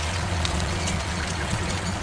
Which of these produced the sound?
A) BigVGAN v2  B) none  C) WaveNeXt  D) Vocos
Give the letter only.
C